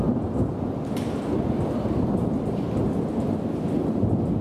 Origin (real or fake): real